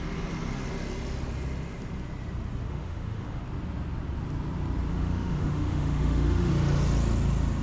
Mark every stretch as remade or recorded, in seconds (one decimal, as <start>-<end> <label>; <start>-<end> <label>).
0.0-2.7 recorded; 2.7-3.4 remade; 3.4-4.9 recorded; 4.9-6.5 remade; 6.5-7.6 recorded